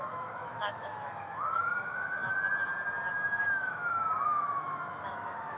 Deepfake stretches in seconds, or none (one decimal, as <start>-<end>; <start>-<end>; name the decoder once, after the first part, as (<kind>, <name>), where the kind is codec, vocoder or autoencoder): 0.0-2.2 (autoencoder, DAC-VAE); 3.4-5.6